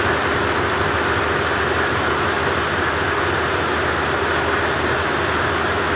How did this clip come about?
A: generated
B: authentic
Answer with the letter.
B